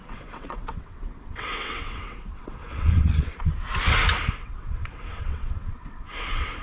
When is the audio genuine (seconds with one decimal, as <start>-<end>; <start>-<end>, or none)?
3.5-4.3